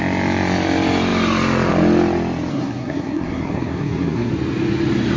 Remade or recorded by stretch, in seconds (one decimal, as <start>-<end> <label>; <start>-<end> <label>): 0.0-2.5 recorded; 2.5-4.3 remade; 4.3-5.2 recorded